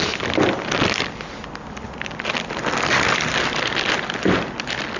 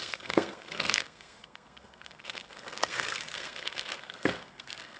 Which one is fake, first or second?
second